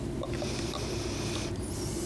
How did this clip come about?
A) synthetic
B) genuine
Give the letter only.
B